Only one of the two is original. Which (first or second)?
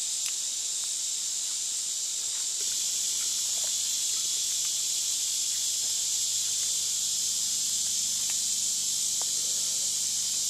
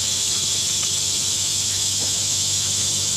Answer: first